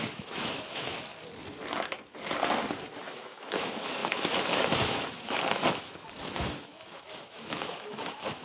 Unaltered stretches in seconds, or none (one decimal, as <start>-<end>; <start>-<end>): 1.1-3.0